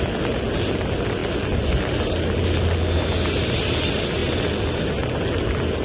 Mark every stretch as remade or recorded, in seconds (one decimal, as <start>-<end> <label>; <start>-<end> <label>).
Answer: 0.0-5.8 recorded